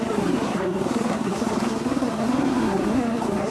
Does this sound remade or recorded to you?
remade